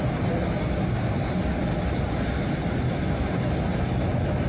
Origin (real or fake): real